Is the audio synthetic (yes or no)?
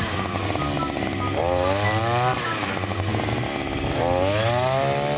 no